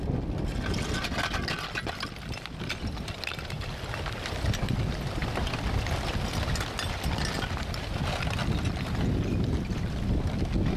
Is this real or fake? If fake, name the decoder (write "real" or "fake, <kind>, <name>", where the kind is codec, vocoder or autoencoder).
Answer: real